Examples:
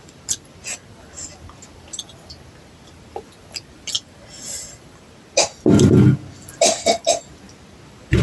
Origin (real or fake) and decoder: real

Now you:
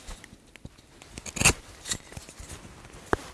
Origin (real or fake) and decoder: real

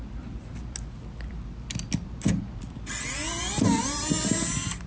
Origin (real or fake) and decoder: real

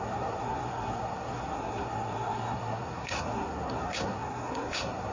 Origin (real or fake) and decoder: fake, codec, SNAC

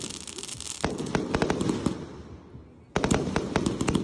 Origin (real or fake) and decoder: real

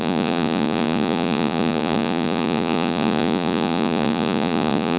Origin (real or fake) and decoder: fake, vocoder, Vocos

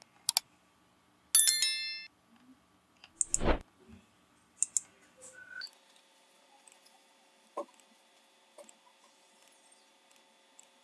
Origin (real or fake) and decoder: real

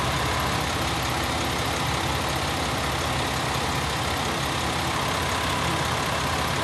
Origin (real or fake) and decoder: real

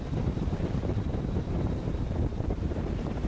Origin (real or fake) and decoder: fake, vocoder, BigVGAN v2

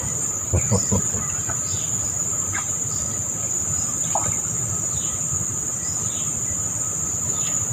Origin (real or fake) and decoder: real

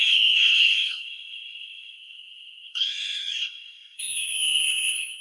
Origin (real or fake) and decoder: fake, codec, SNAC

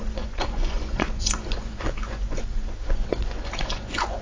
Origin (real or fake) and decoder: fake, vocoder, Vocos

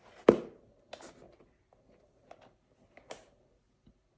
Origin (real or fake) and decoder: real